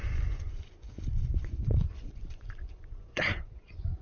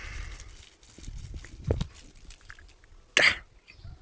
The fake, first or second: first